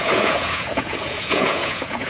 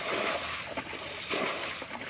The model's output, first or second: first